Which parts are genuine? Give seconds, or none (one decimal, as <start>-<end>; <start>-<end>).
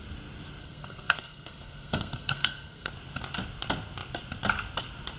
0.0-0.6; 2.9-5.2